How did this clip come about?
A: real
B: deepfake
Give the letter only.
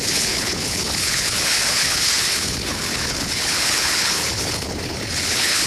B